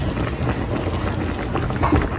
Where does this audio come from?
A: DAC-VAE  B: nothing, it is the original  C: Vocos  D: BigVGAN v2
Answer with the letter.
B